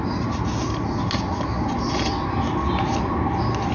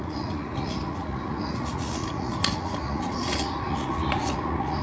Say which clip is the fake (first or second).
second